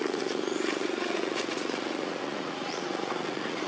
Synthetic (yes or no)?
yes